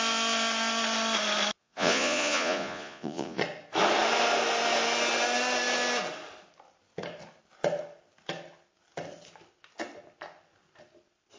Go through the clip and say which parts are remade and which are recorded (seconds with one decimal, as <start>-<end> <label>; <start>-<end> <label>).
0.0-1.6 recorded; 1.6-3.4 remade; 3.4-11.4 recorded